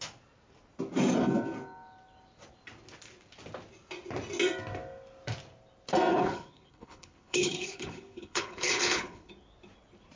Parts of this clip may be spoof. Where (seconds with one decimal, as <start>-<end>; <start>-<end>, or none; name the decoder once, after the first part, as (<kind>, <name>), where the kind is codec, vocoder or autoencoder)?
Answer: 6.1-9.3 (codec, HILCodec)